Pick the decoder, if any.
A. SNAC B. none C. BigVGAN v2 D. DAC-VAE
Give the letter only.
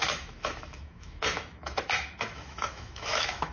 D